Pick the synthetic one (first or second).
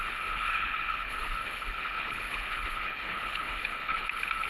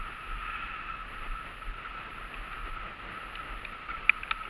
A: first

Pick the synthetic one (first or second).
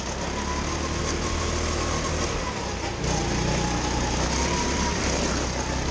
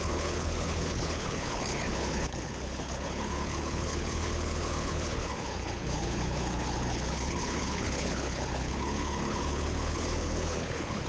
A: second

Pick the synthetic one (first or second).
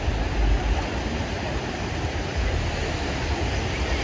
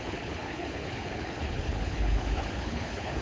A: second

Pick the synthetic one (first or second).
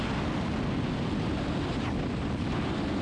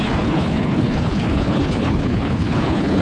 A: second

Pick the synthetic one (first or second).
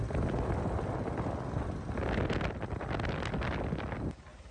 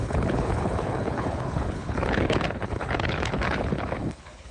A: second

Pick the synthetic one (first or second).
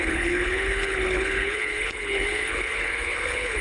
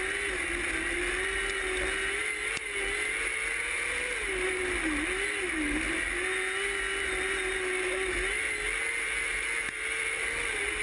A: first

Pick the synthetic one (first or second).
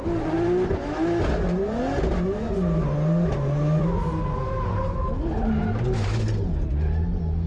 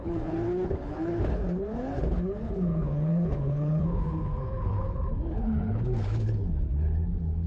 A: second